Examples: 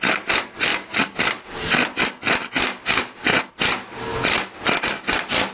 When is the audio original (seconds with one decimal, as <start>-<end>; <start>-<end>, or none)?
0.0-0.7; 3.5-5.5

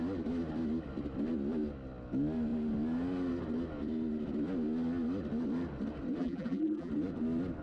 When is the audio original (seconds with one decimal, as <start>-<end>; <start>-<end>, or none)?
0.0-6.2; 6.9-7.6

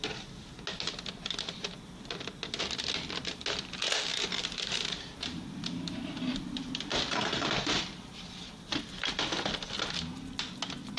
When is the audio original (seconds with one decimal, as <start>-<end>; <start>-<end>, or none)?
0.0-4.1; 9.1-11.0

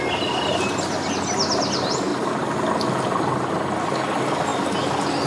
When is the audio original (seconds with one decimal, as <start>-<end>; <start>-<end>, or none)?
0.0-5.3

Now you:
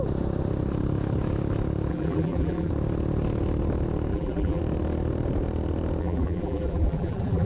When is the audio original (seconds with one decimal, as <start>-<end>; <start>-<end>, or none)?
0.0-1.9; 2.7-4.1; 4.6-6.0